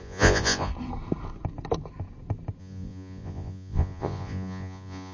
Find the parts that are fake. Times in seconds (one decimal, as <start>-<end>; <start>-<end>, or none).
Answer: 0.0-0.7; 2.6-5.1